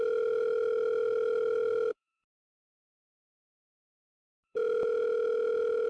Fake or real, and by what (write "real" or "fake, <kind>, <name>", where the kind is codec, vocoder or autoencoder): fake, autoencoder, DAC-VAE